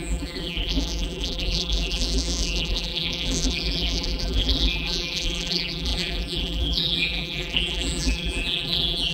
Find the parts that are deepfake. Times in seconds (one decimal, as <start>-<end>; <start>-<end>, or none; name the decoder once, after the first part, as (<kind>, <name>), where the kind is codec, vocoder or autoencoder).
0.0-9.1 (vocoder, BigVGAN v2)